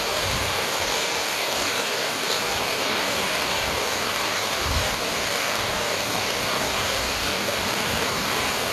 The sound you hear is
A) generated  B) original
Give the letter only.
A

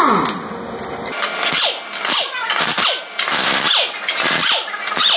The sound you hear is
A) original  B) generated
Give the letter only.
A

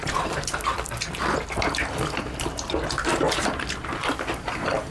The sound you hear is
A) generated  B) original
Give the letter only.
A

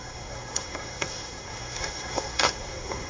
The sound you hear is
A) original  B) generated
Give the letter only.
B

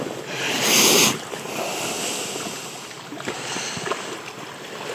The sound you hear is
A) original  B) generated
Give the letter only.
A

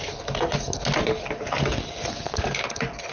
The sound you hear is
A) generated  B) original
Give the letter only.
B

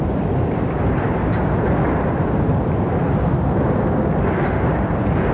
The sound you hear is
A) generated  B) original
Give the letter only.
B